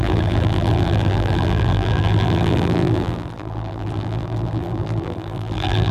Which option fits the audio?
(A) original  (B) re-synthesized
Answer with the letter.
B